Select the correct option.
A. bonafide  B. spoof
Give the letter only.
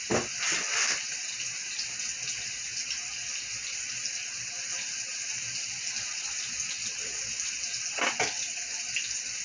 A